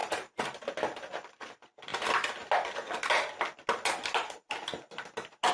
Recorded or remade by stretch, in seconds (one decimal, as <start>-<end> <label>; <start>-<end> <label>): 0.0-0.7 remade; 0.7-5.5 recorded